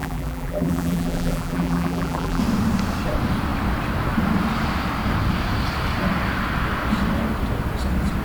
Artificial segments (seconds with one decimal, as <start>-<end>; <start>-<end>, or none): 0.0-2.4